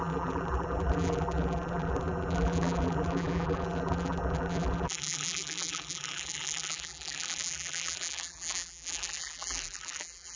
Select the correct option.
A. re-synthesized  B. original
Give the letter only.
A